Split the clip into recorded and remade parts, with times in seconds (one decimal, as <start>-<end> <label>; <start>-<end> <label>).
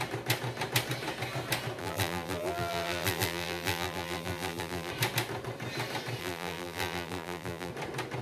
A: 0.0-1.8 recorded; 1.8-4.9 remade; 4.9-6.2 recorded; 6.2-7.7 remade; 7.7-8.2 recorded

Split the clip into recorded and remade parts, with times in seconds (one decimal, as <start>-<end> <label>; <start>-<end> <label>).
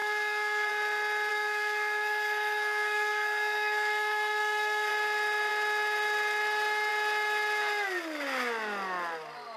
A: 0.0-0.7 remade; 0.7-1.3 recorded; 1.3-4.9 remade; 4.9-9.6 recorded